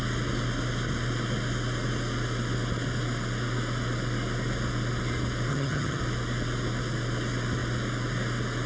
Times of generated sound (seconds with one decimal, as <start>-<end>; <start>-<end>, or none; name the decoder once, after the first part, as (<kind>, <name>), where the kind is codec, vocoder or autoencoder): 5.5-6.0 (vocoder, HiFi-GAN)